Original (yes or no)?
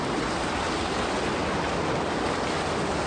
yes